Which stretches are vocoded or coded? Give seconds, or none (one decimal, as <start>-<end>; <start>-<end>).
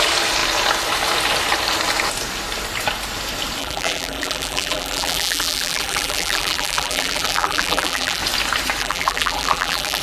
3.6-8.2; 8.8-10.0